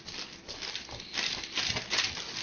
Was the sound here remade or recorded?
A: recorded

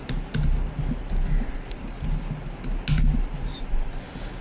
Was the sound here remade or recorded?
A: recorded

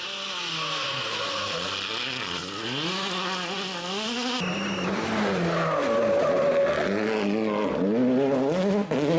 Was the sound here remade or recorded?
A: recorded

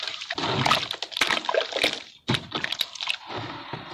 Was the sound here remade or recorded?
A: recorded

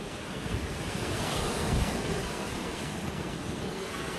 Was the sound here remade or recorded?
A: remade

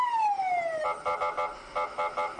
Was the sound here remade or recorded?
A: recorded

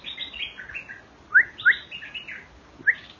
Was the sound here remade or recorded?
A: recorded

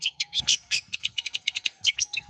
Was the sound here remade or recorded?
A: remade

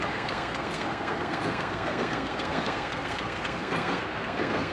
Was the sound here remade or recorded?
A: remade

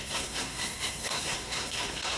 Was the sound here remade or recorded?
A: remade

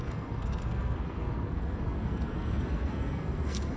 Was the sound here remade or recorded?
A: remade